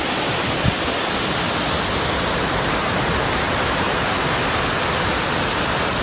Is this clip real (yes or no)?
yes